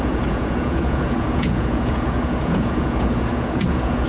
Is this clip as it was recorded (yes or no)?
no